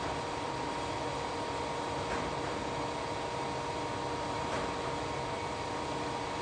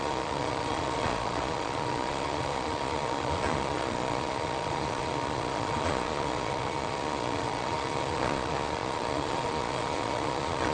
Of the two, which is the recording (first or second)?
first